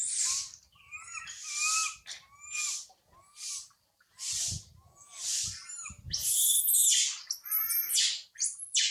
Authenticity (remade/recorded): recorded